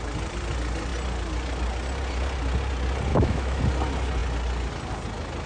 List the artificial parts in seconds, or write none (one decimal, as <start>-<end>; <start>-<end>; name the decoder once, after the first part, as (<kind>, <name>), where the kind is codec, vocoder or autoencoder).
3.1-3.6 (autoencoder, DAC-VAE)